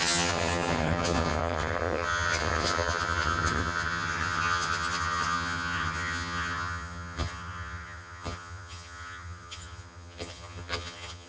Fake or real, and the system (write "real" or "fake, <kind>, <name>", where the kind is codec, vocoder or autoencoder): fake, vocoder, HiFi-GAN